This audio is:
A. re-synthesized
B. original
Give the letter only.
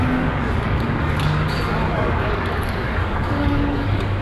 A